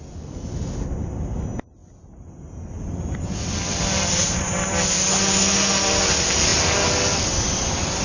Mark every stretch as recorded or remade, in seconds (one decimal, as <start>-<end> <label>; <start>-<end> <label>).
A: 0.0-8.0 recorded